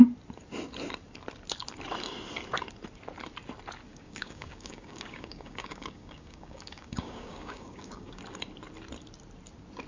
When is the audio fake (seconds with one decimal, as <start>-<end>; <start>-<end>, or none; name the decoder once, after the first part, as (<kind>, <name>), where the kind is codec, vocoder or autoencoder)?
3.9-8.2 (codec, DAC)